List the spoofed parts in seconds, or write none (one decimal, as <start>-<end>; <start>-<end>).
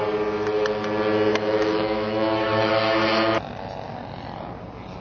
1.3-2.7